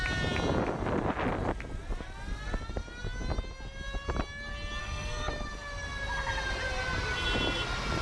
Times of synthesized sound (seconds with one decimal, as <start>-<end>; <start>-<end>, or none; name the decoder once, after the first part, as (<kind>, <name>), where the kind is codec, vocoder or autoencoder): 4.8-5.3 (codec, SNAC)